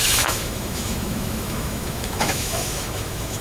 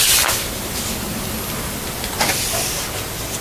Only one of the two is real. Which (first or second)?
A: second